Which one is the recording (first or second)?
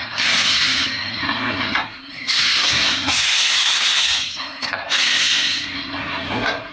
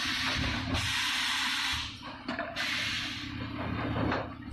second